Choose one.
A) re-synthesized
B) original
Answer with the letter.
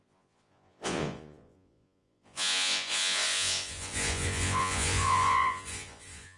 A